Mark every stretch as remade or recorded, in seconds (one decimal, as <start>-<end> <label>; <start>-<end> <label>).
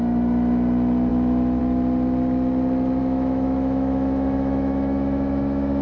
0.0-1.1 recorded; 1.1-1.6 remade; 1.6-3.0 recorded; 3.0-5.8 remade